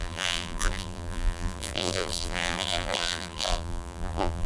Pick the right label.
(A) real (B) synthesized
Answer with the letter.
B